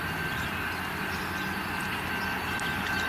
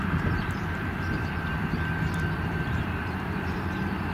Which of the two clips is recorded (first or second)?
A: first